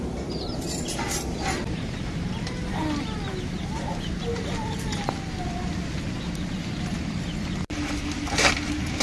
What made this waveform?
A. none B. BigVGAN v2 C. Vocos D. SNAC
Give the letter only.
A